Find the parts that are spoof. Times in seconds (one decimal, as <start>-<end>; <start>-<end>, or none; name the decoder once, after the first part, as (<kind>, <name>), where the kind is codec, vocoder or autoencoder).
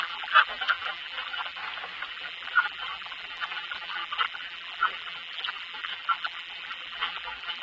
0.0-1.6 (vocoder, BigVGAN v2); 2.1-7.6